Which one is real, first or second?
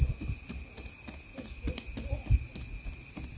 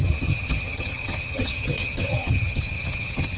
first